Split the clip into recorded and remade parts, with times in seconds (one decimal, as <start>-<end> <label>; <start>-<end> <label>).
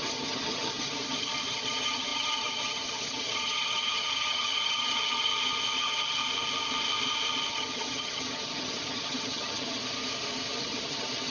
0.0-5.3 remade; 5.3-5.8 recorded; 5.8-6.2 remade; 6.2-7.5 recorded; 7.5-9.8 remade; 9.8-10.6 recorded; 10.6-11.3 remade